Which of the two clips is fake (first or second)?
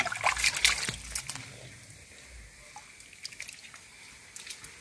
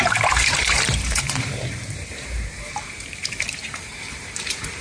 second